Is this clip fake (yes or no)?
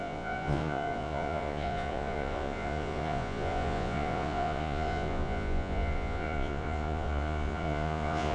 yes